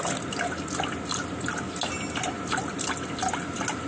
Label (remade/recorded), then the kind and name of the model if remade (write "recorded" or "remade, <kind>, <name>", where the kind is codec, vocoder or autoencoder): recorded